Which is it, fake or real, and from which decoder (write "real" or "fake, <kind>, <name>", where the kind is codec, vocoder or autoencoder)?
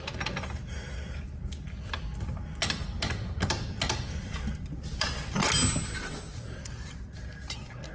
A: real